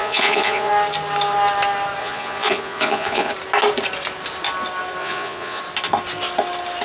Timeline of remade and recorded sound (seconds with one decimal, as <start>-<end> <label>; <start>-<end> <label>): 0.0-0.7 remade; 0.7-2.0 recorded; 2.0-3.3 remade; 3.3-5.0 recorded; 5.0-5.6 remade; 5.6-6.8 recorded